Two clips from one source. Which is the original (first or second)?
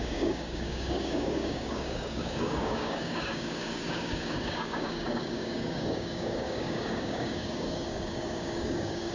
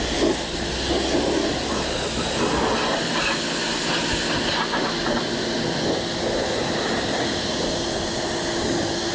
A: second